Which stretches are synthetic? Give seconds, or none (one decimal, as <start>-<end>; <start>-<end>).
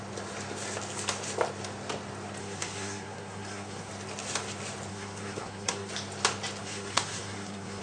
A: 2.4-3.9; 4.9-5.9; 6.6-7.8